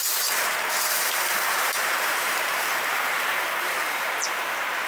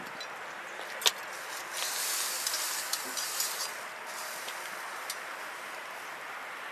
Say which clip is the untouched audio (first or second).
second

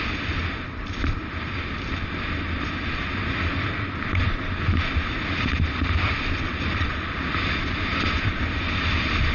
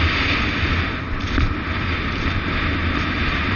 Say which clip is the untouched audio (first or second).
second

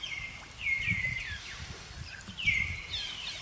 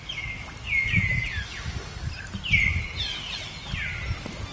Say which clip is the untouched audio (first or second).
second